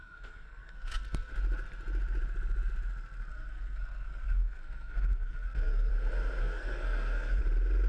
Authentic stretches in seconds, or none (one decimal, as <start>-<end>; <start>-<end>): 1.3-3.3; 5.9-6.4; 7.4-7.9